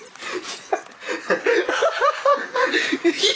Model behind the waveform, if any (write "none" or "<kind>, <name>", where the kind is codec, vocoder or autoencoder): vocoder, Vocos